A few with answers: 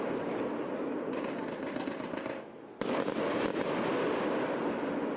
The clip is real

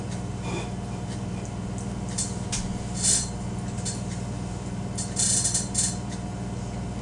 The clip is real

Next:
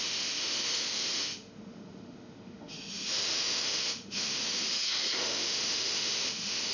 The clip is fake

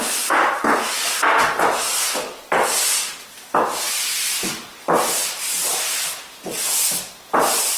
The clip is real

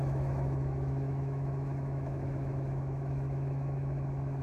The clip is fake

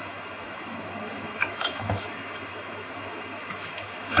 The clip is fake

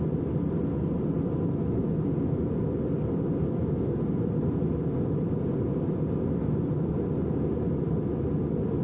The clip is real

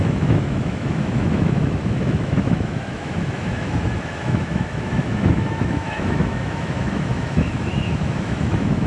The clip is fake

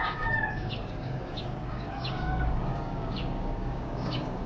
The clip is fake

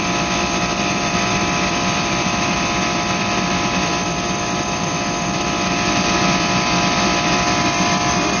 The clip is fake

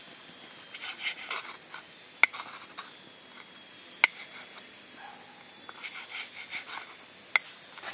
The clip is real